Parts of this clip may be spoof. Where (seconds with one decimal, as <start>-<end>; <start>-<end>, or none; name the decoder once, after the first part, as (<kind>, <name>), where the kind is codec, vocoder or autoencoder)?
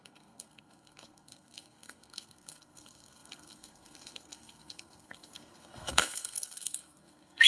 0.0-7.5 (codec, SNAC)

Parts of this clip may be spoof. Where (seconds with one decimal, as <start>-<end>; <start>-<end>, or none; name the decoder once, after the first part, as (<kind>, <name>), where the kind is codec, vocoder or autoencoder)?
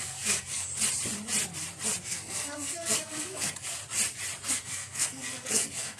0.0-0.7 (codec, SNAC); 2.0-3.8; 4.5-6.0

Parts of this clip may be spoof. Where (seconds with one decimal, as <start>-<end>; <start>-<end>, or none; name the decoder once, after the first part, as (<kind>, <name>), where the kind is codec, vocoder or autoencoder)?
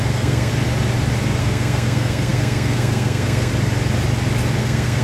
0.0-0.5 (codec, SNAC); 1.4-3.5; 4.6-5.0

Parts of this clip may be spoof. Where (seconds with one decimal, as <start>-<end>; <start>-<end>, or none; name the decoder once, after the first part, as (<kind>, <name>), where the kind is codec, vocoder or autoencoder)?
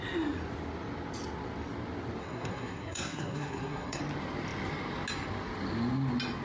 2.2-4.0 (codec, SNAC)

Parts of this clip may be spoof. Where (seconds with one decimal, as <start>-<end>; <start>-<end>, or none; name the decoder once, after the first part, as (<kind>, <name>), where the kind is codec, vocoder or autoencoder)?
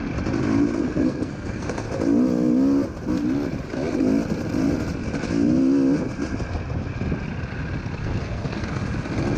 0.8-1.9 (codec, SNAC); 8.0-8.8